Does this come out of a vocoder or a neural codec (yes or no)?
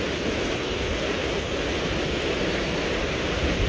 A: no